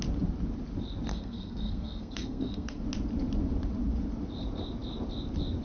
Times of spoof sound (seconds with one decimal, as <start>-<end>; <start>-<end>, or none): 1.1-2.8